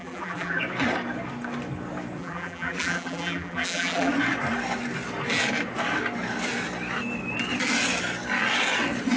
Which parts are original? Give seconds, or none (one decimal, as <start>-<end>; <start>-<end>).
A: 0.6-2.2; 4.1-9.2